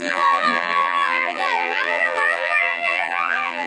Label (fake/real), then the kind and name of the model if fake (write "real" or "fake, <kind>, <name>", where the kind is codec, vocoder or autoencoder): fake, vocoder, BigVGAN v2